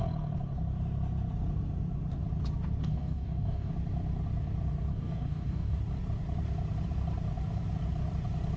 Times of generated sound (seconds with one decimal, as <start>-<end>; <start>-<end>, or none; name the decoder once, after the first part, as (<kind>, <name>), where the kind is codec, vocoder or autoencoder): 2.8-3.7 (codec, DAC); 4.9-5.8